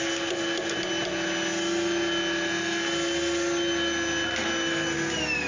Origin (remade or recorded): recorded